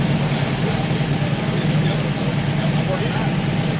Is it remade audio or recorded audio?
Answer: recorded